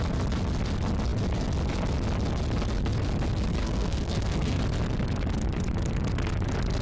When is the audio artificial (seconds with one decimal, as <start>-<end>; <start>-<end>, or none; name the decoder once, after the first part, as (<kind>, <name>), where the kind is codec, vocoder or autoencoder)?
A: 3.6-4.6 (codec, SNAC)